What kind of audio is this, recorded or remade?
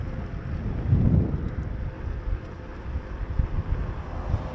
recorded